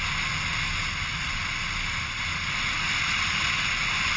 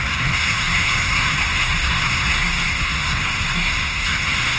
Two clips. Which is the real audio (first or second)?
first